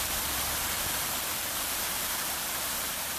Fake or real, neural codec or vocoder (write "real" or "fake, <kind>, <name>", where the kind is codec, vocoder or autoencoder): fake, vocoder, BigVGAN v2